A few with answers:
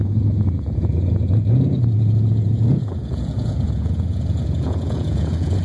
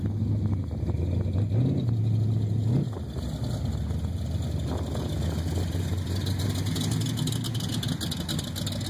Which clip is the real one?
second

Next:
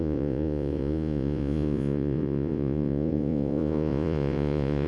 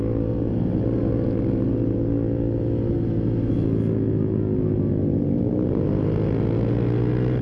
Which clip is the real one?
second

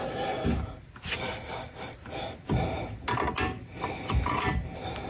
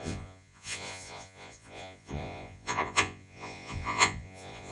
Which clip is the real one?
first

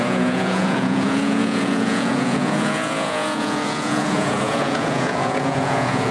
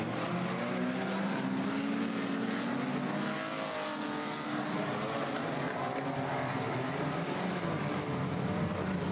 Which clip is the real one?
second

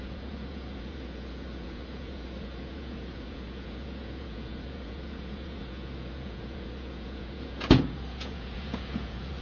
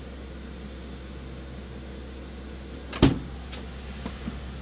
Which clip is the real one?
second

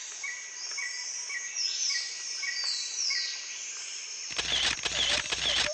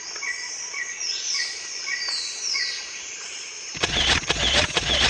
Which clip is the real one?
first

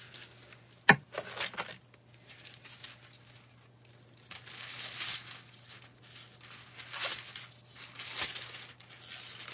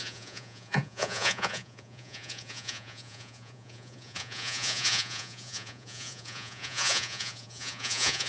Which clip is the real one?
first